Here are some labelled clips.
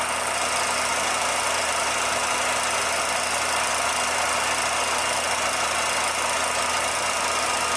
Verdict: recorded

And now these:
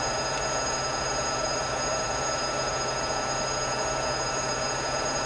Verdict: remade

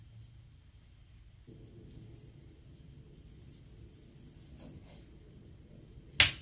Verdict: recorded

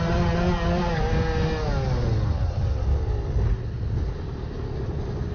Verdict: recorded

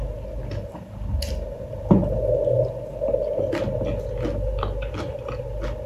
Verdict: recorded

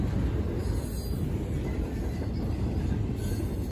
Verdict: recorded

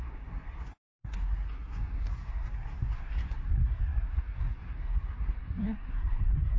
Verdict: remade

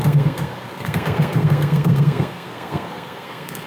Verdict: remade